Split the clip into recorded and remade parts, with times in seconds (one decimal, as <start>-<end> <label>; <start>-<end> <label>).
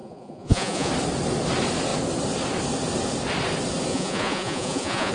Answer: 0.0-0.9 remade; 0.9-3.9 recorded; 3.9-5.1 remade